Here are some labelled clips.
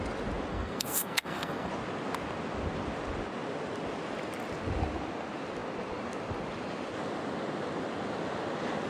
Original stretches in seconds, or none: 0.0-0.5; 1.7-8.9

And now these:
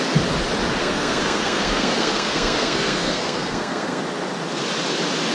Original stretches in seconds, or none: 0.0-0.8; 4.0-5.3

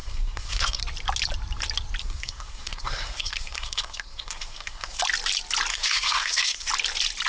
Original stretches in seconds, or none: 0.8-2.0; 5.0-5.7; 6.7-7.3

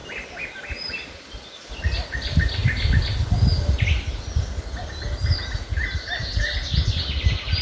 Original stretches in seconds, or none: 0.0-7.6

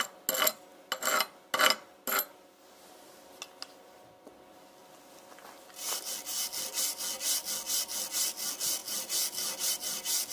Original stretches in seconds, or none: 0.0-10.3

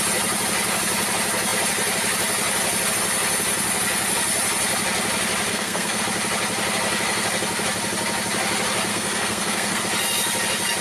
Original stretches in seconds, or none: 0.0-5.5; 6.0-8.9; 9.8-10.8